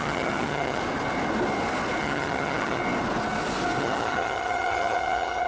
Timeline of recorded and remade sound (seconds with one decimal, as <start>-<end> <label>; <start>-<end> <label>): 0.0-0.8 remade; 0.8-2.0 recorded; 2.0-2.8 remade; 2.8-3.8 recorded; 3.8-5.5 remade